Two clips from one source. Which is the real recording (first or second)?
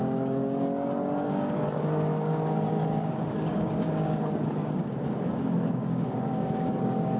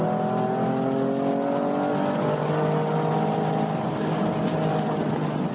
second